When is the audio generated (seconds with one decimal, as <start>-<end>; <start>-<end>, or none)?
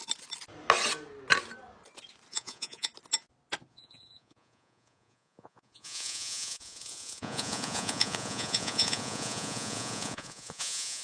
2.3-2.9; 3.7-11.0